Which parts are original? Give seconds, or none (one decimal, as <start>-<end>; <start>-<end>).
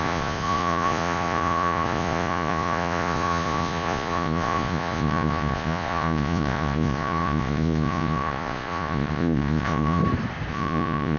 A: 10.0-10.5